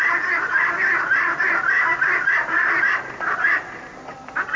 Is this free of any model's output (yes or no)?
no